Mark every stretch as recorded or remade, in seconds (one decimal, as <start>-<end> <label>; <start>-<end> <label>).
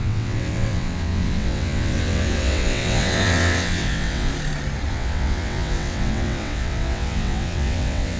0.0-4.3 remade; 4.3-4.9 recorded; 4.9-8.2 remade